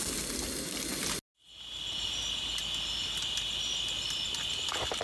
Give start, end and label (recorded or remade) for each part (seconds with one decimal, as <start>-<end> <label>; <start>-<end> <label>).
0.0-5.0 recorded